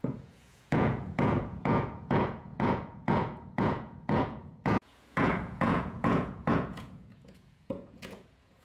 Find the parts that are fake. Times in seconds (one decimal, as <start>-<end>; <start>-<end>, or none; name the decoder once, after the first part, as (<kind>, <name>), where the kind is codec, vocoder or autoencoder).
0.0-8.6 (vocoder, Vocos)

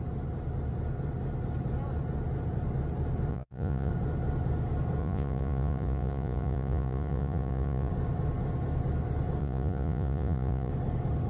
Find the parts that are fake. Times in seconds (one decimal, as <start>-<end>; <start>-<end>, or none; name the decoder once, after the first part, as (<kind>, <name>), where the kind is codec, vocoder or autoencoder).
3.3-3.9 (vocoder, Vocos); 5.0-7.9; 9.4-10.7